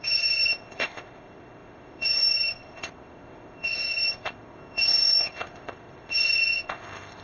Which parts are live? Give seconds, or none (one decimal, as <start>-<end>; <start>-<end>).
none